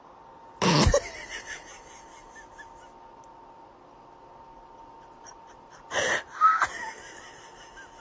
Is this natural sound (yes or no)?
yes